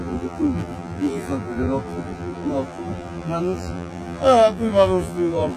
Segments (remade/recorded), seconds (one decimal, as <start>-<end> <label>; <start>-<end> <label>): 0.0-5.6 remade